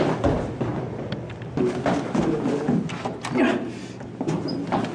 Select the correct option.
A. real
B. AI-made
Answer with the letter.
A